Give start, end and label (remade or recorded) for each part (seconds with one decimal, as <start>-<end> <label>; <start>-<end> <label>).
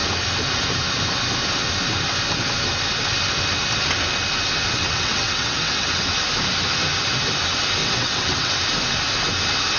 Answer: 0.0-4.6 recorded; 4.6-6.1 remade; 6.1-7.8 recorded; 7.8-8.5 remade; 8.5-9.8 recorded